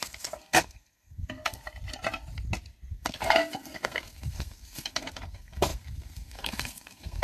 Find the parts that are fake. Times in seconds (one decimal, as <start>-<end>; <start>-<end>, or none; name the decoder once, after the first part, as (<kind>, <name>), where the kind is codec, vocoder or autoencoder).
0.0-1.6 (codec, SNAC); 2.9-7.2